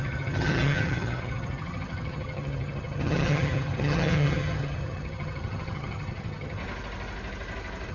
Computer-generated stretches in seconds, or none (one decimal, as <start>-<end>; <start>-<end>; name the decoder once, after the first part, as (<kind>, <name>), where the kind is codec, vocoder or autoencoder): 0.0-6.6 (vocoder, HiFi-GAN)